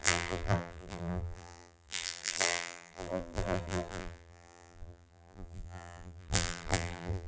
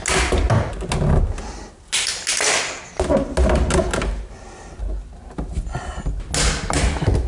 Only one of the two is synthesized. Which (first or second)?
first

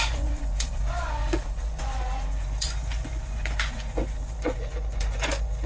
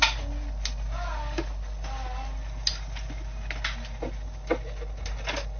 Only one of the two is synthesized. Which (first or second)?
first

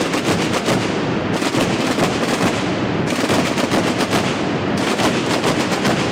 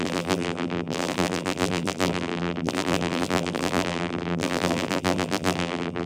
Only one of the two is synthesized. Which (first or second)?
second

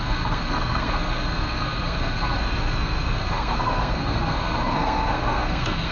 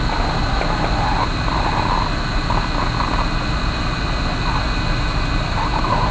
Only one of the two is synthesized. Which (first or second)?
first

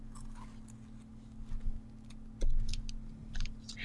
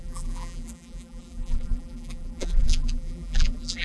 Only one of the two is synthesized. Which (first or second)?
second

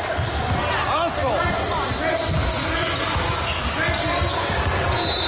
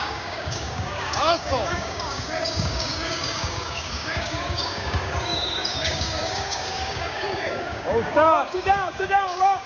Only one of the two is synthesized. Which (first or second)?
second